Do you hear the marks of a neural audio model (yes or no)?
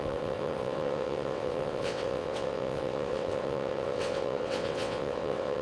yes